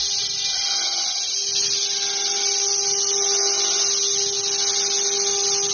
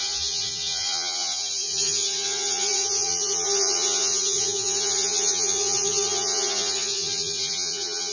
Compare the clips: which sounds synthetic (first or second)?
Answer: second